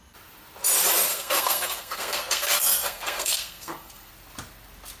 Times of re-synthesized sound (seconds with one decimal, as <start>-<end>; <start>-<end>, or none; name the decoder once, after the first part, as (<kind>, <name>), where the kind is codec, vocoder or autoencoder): 1.1-4.1 (codec, SNAC)